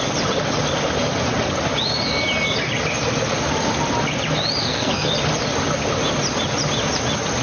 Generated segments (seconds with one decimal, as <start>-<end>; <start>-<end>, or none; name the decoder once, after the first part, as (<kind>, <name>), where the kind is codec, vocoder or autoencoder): 4.6-5.1 (codec, SNAC)